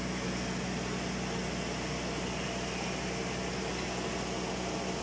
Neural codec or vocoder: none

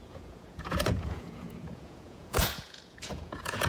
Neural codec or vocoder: vocoder, Vocos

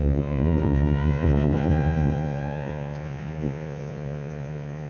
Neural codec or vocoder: vocoder, Vocos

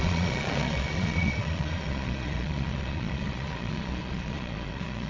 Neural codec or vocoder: vocoder, Vocos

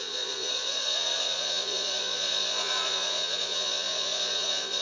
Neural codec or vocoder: vocoder, Vocos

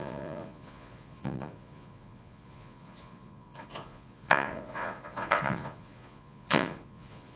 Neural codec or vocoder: vocoder, Vocos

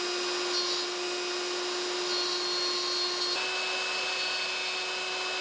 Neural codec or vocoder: none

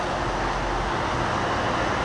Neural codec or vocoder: none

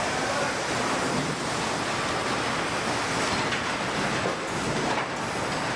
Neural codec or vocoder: none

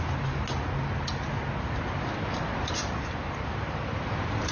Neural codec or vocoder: none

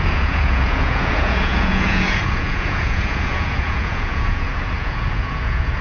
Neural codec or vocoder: vocoder, Vocos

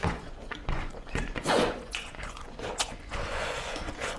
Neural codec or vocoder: vocoder, Vocos